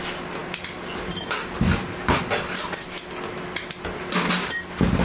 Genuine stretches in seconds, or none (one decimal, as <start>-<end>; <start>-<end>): 0.0-5.0